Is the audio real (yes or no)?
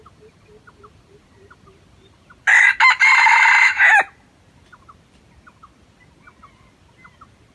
yes